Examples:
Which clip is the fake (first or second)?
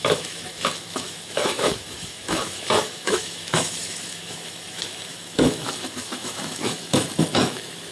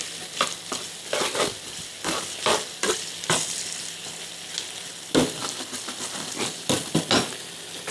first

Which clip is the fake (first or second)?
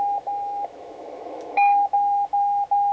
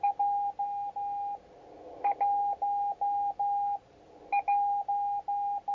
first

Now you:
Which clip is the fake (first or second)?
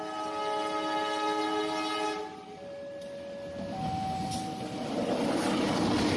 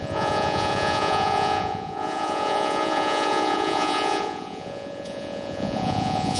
second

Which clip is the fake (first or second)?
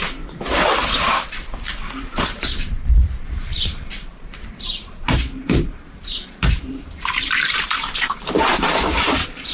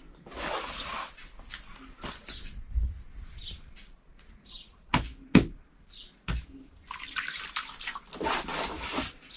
first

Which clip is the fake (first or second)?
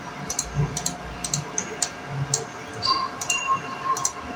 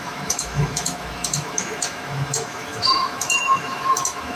second